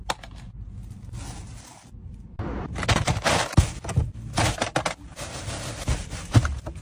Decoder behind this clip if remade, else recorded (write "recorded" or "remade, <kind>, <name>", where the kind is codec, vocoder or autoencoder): recorded